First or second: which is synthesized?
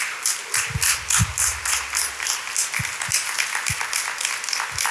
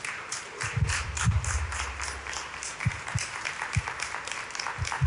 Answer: second